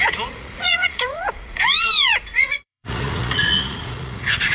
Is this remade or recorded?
remade